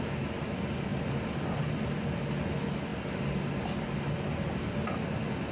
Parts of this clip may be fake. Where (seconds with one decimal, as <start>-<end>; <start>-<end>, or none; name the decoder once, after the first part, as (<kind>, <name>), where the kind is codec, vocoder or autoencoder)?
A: none